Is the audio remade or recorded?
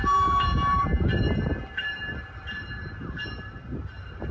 recorded